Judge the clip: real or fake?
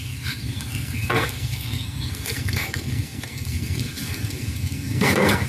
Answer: fake